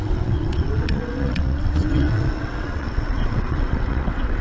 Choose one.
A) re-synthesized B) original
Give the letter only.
A